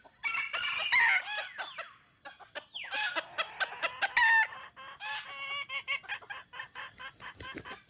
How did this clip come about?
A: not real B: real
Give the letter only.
B